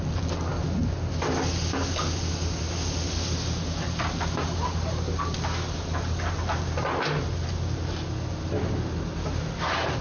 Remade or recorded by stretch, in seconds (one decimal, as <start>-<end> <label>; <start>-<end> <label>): 0.0-10.0 recorded